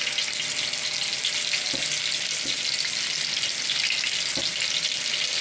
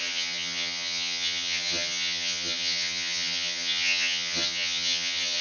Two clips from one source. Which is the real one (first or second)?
first